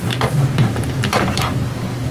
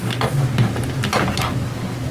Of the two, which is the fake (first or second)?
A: first